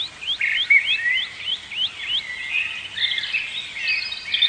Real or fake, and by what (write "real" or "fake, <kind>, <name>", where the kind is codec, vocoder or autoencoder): real